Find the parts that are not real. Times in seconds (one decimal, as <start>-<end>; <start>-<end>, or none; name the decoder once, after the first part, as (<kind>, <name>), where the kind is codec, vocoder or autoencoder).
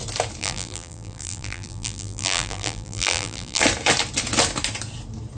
0.4-3.6 (vocoder, BigVGAN v2)